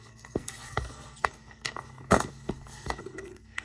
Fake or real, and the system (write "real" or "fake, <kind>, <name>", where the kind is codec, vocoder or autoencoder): fake, codec, SNAC